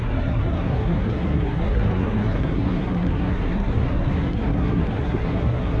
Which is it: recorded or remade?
remade